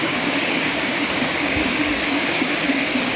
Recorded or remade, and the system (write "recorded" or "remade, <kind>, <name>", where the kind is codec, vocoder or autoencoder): remade, codec, DAC